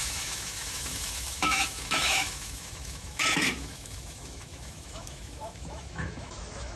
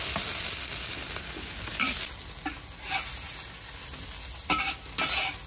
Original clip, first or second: second